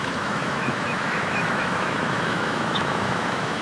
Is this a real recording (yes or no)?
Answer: no